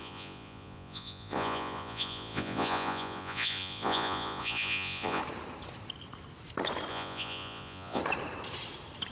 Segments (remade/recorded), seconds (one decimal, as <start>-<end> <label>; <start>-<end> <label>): 0.0-5.2 remade; 5.2-6.9 recorded; 6.9-8.0 remade; 8.0-9.1 recorded